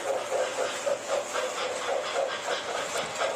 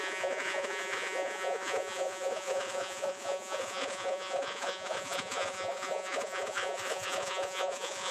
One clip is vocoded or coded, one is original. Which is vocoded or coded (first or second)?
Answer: second